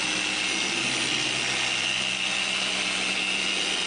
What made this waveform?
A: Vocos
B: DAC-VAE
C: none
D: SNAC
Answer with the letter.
C